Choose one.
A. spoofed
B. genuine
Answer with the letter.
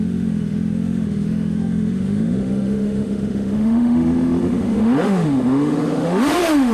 A